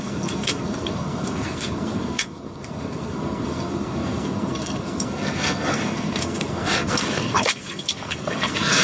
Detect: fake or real fake